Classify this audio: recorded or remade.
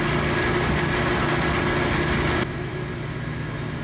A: recorded